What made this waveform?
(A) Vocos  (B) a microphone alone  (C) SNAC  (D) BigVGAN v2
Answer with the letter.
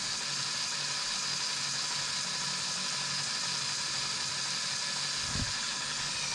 B